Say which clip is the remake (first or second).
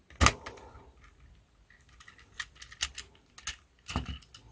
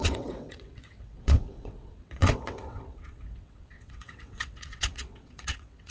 second